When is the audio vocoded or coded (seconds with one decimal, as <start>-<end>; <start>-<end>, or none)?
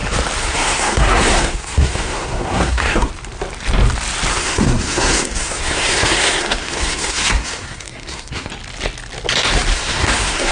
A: 0.4-3.1; 4.3-8.5; 9.7-10.5